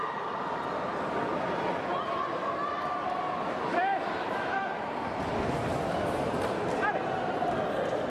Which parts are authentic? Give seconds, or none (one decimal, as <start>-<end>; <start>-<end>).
none